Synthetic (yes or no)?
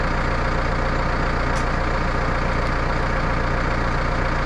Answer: no